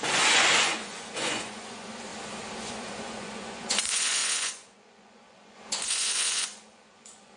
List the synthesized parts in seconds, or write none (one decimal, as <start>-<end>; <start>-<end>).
0.0-2.1; 2.6-7.4